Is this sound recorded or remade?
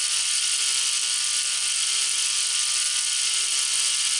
recorded